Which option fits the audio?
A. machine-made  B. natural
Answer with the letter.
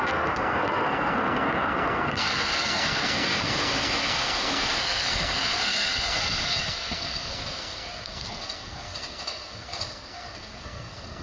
A